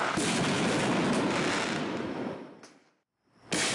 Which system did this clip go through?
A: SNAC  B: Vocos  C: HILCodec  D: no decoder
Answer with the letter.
D